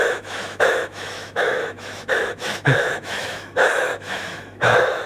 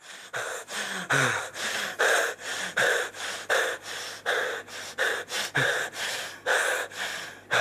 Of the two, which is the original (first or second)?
second